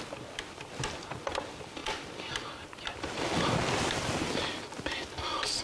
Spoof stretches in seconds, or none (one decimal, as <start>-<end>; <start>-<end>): none